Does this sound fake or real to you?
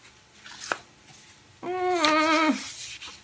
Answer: real